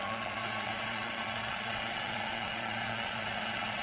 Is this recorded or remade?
remade